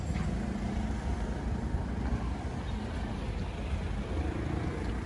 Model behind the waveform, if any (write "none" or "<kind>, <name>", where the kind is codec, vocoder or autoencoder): none